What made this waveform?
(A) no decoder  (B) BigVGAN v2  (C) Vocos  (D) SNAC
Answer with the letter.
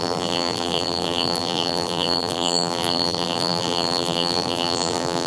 B